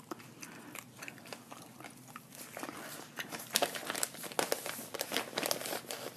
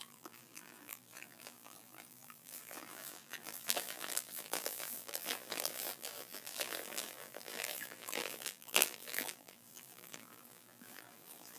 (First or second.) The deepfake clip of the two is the second